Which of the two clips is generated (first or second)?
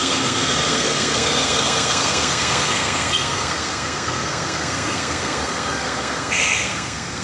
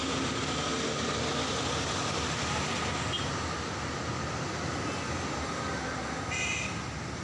first